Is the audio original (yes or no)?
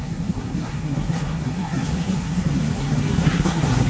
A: no